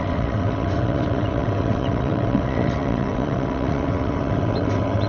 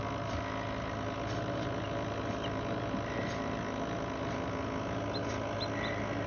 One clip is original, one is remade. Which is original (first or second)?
second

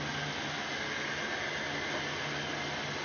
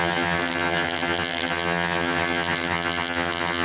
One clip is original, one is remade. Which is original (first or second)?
first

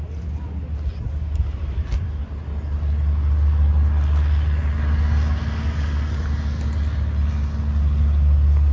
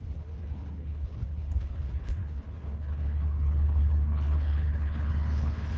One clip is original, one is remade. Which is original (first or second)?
first